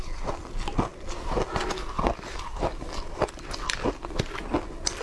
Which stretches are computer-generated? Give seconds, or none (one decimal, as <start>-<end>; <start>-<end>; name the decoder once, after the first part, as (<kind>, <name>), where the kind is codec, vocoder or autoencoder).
none